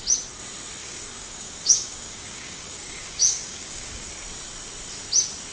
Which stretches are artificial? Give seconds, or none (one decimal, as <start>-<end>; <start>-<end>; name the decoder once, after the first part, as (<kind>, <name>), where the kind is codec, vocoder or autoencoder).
0.8-4.1 (codec, DAC)